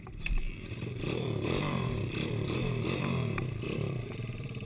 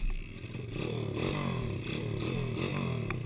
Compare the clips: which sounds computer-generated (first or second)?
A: first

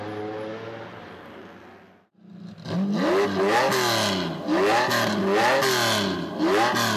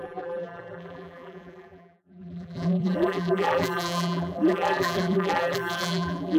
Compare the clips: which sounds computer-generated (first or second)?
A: second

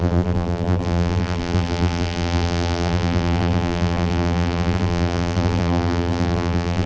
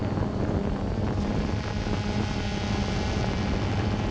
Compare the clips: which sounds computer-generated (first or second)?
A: first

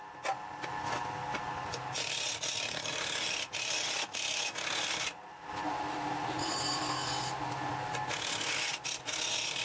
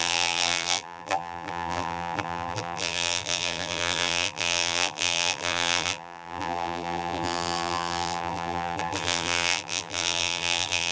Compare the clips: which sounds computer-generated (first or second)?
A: second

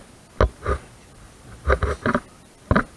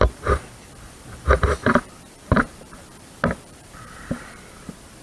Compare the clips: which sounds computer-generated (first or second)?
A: second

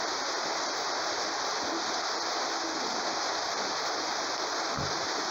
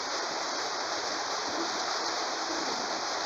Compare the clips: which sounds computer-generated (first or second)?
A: second